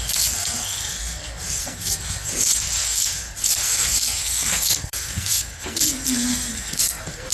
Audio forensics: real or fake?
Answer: fake